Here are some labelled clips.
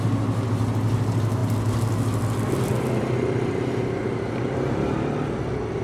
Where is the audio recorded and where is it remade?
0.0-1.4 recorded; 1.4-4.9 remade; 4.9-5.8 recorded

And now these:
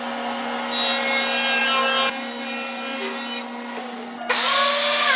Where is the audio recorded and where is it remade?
0.0-5.2 recorded

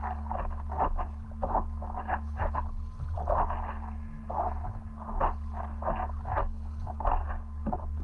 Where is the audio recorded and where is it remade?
0.0-6.4 recorded; 6.4-7.3 remade; 7.3-8.0 recorded